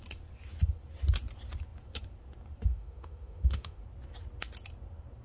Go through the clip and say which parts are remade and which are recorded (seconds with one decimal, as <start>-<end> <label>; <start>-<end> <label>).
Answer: 0.0-2.7 recorded; 2.7-3.8 remade; 3.8-5.2 recorded